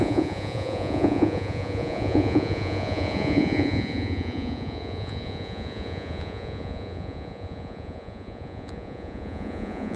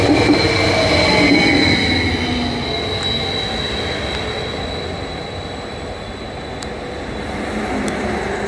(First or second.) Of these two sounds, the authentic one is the second